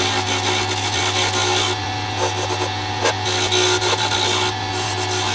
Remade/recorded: recorded